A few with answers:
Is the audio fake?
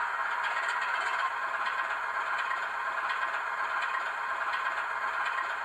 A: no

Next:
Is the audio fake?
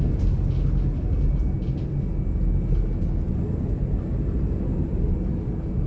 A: no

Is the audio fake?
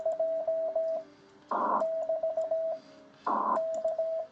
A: no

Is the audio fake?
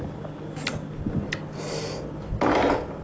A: no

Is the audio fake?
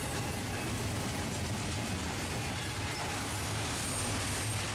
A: no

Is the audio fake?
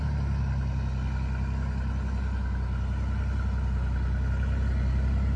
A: no